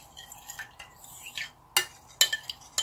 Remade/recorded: recorded